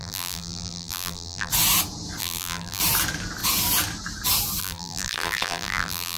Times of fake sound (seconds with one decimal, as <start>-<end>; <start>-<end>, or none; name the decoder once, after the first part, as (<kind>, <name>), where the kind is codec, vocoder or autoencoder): 0.0-1.5 (vocoder, BigVGAN v2); 2.2-2.8; 4.6-6.2